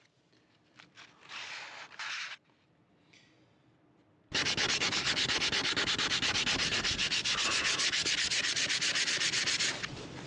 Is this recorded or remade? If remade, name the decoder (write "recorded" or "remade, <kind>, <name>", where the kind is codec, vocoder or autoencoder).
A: recorded